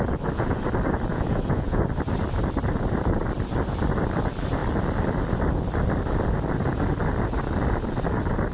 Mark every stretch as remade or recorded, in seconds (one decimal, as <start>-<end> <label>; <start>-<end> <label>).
0.0-1.1 recorded; 1.1-1.8 remade; 1.8-8.5 recorded